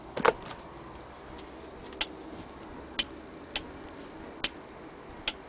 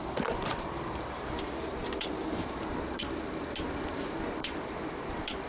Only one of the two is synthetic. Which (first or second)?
second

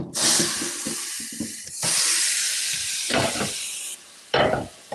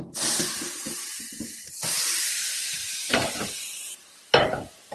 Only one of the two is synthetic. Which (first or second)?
second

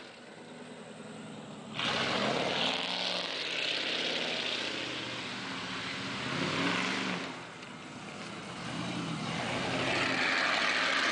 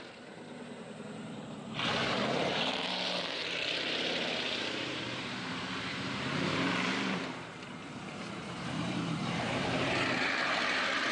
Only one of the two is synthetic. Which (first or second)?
second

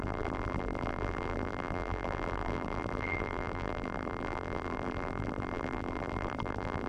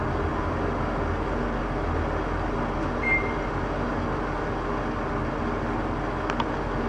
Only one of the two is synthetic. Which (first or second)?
first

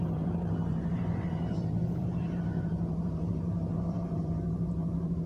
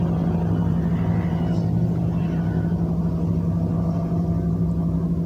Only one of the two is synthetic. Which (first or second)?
first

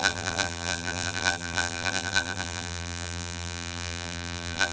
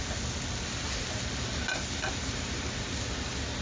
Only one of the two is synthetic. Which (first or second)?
first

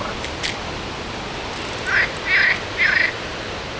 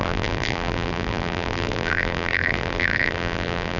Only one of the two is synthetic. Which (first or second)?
second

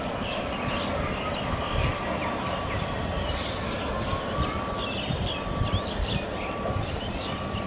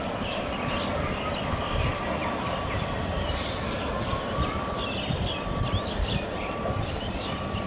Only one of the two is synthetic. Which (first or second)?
second